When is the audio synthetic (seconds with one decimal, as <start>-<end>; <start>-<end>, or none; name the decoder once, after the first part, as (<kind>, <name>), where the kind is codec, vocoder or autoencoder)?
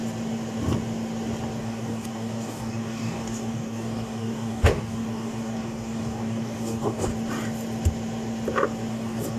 1.6-7.1 (codec, DAC); 8.9-9.4